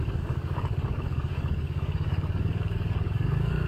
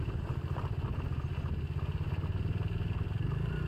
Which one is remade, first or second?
first